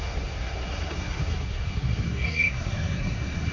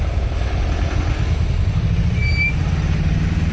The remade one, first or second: first